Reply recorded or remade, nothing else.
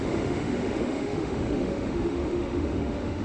remade